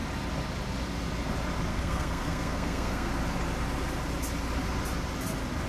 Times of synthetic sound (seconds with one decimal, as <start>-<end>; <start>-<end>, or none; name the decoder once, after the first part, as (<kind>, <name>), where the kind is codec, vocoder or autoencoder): 1.7-3.1 (codec, SNAC)